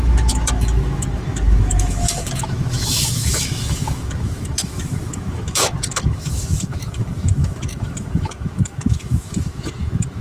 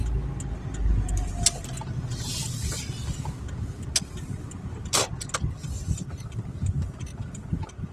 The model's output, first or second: first